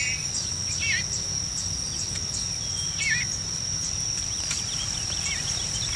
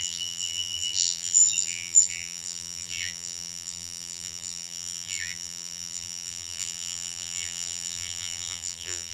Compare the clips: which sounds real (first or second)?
first